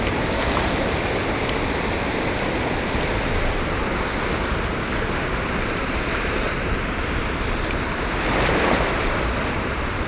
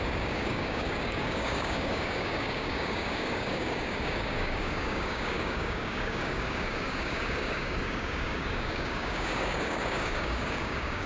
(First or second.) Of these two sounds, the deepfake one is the second